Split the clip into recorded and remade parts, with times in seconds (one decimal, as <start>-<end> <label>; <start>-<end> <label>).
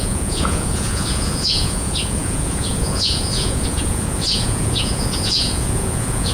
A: 0.0-6.3 remade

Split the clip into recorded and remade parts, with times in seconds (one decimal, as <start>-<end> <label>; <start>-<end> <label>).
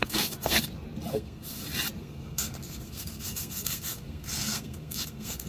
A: 0.0-0.6 remade; 0.6-1.1 recorded; 1.1-1.6 remade; 1.6-2.0 recorded; 2.0-5.5 remade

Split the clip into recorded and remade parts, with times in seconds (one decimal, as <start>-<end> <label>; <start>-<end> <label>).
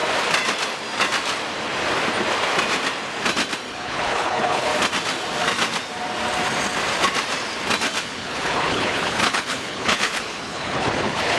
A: 0.0-3.7 recorded; 3.7-4.7 remade; 4.7-8.0 recorded; 8.0-11.4 remade